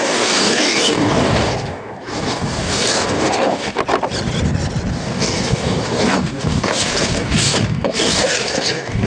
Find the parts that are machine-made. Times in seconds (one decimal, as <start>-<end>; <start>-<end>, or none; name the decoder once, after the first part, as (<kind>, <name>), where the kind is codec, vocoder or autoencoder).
0.0-3.8 (codec, DAC); 4.9-9.1

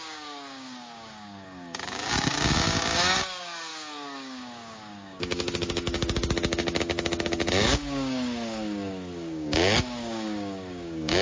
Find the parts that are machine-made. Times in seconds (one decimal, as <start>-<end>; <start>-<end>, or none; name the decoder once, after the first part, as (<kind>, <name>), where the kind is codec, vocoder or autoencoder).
0.0-11.2 (codec, DAC)

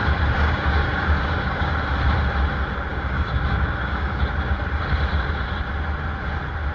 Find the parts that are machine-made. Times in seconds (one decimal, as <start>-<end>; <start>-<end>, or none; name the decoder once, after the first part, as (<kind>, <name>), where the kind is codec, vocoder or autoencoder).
0.0-1.7 (codec, DAC); 2.9-4.2

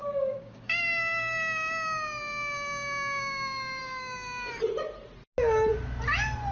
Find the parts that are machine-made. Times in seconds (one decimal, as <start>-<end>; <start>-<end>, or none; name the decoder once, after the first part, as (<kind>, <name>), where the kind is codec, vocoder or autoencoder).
0.0-0.8 (codec, DAC); 3.8-4.5

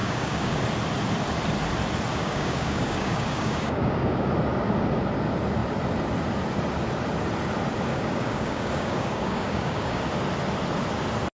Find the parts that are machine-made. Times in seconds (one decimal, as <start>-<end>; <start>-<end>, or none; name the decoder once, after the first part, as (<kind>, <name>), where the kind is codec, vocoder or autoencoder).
0.0-0.6 (codec, DAC); 2.1-4.3; 7.9-10.0

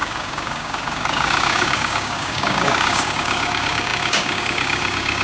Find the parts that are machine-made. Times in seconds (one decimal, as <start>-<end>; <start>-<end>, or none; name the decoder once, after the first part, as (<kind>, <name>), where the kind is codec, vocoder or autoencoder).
0.0-5.2 (codec, DAC)

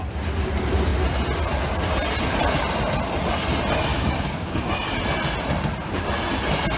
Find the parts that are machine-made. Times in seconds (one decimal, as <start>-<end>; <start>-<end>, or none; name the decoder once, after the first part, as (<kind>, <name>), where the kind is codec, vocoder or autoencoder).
3.9-4.7 (codec, DAC)